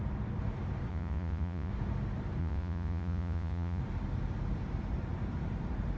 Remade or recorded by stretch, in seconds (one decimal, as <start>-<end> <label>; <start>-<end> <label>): 0.0-0.9 recorded; 0.9-1.7 remade; 1.7-2.4 recorded; 2.4-3.8 remade; 3.8-6.0 recorded